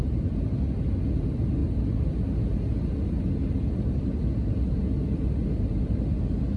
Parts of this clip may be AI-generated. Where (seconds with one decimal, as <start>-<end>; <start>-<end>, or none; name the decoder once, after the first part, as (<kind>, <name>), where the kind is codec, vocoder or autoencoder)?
1.6-2.1 (vocoder, BigVGAN v2); 3.4-4.2